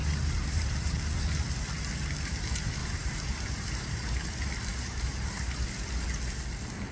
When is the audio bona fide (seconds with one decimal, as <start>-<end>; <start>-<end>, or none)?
0.9-2.8; 4.0-4.7; 5.9-6.9